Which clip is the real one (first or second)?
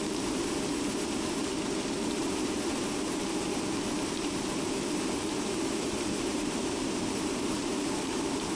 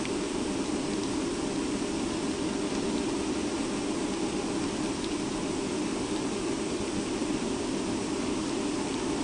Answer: second